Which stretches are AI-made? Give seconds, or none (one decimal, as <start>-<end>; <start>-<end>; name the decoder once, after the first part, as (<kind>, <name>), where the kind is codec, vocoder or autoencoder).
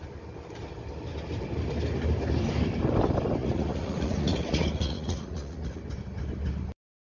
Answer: 3.4-5.8 (vocoder, Vocos)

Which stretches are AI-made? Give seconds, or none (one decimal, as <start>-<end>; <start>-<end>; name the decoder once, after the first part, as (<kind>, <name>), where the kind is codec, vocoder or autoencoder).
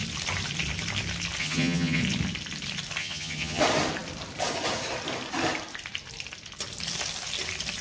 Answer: 1.4-2.0 (vocoder, HiFi-GAN); 3.0-3.6